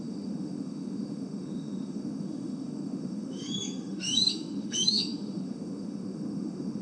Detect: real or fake fake